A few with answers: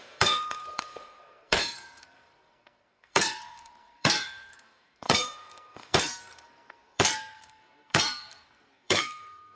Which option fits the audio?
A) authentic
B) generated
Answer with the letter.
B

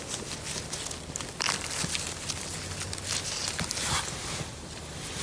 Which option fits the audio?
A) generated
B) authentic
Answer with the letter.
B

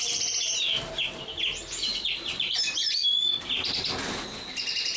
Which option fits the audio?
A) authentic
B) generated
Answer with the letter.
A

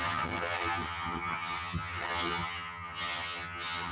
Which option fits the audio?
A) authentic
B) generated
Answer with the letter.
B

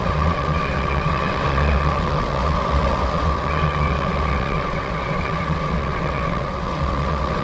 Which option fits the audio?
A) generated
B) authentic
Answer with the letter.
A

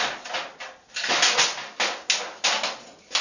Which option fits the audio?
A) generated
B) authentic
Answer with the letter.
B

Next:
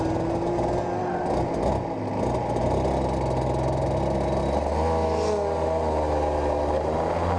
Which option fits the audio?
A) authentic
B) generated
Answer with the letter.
A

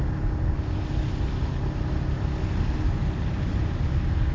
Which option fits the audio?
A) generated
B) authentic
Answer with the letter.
B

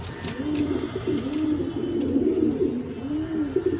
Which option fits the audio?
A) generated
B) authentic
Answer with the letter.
B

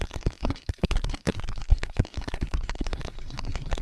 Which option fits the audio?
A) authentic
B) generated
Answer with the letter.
B